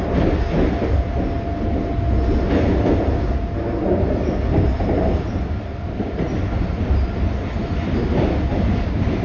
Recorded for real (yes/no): yes